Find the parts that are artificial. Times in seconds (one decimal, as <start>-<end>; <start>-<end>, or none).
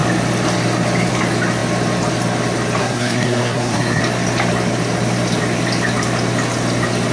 2.8-4.0